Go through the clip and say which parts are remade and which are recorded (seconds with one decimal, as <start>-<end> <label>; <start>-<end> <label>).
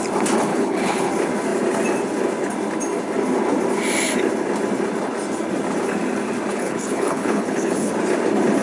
0.0-0.5 recorded; 0.5-1.1 remade; 1.1-6.5 recorded; 6.5-7.9 remade; 7.9-8.6 recorded